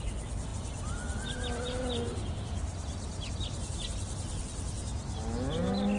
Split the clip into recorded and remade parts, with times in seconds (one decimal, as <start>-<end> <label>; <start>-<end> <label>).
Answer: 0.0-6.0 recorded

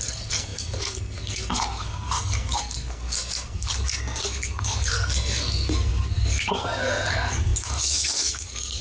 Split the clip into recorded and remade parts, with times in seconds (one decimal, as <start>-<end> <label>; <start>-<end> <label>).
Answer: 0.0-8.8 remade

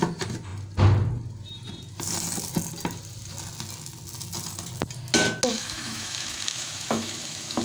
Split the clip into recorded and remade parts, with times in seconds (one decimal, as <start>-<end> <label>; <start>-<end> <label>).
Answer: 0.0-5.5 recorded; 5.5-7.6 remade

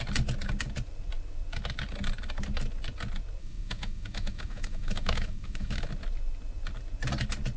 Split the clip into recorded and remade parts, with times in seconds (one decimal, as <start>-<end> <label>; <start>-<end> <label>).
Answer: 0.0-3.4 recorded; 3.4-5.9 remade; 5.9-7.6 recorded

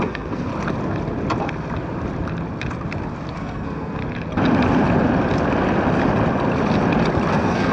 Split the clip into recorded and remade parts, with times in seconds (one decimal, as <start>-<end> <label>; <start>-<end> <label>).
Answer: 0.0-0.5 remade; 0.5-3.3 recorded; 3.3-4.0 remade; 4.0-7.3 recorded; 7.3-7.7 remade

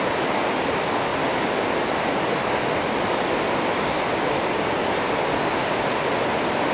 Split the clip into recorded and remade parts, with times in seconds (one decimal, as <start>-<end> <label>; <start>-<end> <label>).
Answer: 0.0-6.7 recorded

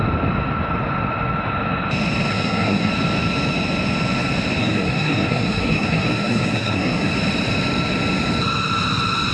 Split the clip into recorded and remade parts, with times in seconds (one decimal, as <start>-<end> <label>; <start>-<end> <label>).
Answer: 0.0-2.3 recorded; 2.3-2.9 remade; 2.9-4.6 recorded; 4.6-7.1 remade; 7.1-9.3 recorded